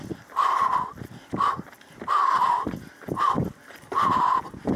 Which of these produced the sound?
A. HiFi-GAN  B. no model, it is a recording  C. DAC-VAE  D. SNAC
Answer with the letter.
B